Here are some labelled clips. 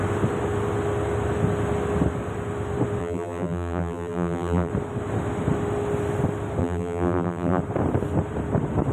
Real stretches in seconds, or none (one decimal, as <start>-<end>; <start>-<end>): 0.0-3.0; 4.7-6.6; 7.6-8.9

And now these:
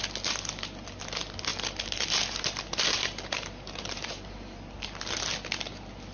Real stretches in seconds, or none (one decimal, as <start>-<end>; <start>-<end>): 0.0-1.5; 4.6-6.1

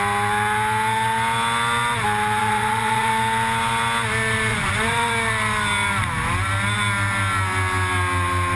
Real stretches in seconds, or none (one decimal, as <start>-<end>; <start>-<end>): 0.0-2.4; 3.1-4.5; 5.1-8.6

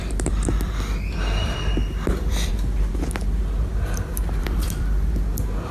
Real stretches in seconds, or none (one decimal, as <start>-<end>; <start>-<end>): 0.0-0.5; 1.1-1.8; 2.5-4.4; 5.1-5.7

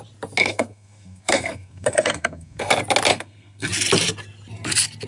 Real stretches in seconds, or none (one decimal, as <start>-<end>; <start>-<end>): 0.0-0.4; 2.7-3.1; 3.7-5.1